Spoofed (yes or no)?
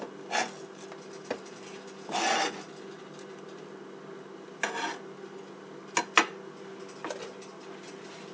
no